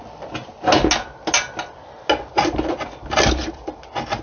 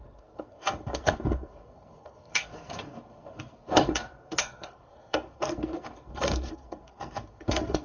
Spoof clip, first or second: second